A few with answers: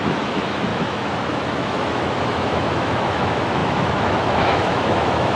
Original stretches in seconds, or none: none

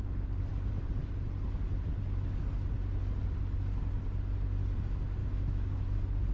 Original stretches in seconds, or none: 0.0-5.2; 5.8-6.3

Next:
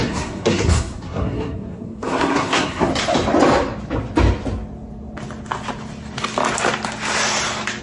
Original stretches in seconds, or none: 2.9-7.8

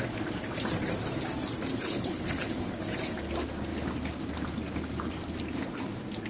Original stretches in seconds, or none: 0.0-1.7; 2.8-6.3

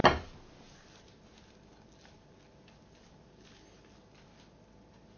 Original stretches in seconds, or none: 0.0-5.2

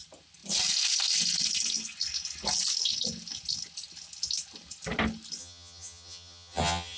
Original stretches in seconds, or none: 0.0-5.4